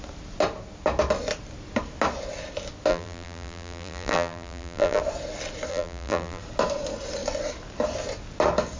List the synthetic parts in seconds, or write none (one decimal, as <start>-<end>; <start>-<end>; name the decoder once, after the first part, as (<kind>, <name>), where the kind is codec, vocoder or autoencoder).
2.9-5.0 (vocoder, BigVGAN v2); 5.7-6.4